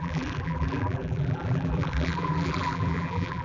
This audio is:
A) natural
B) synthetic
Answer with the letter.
B